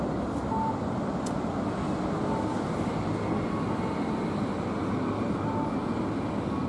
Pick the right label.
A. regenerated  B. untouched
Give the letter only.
B